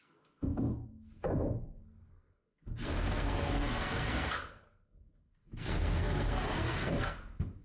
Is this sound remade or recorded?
remade